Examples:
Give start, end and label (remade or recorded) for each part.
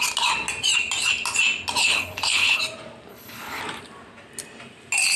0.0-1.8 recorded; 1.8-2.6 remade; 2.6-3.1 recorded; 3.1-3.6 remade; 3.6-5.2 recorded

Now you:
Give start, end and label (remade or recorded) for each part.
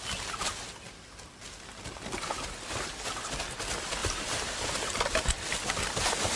0.0-4.0 recorded; 4.0-5.9 remade; 5.9-6.4 recorded